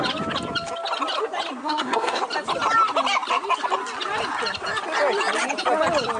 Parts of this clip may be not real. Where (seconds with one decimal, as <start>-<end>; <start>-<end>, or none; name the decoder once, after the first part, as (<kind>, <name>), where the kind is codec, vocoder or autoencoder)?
1.6-2.2 (codec, SNAC)